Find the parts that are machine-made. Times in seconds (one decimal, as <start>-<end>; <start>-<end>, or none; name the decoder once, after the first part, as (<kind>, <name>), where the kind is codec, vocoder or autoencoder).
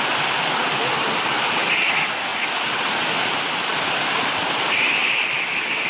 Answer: none